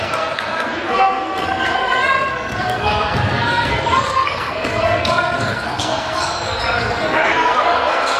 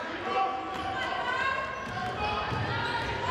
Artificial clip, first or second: first